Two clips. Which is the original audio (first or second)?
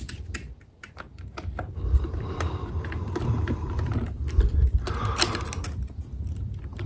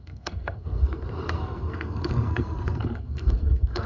first